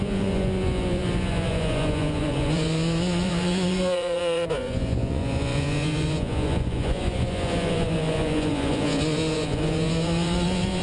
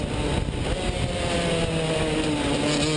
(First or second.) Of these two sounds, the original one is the second